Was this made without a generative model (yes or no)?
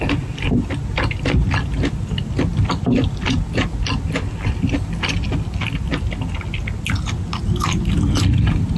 yes